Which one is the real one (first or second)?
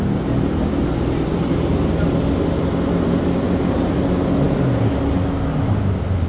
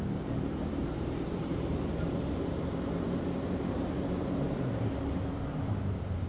first